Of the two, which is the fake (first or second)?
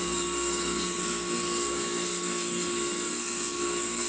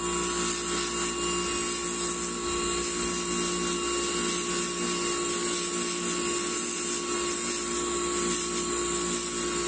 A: first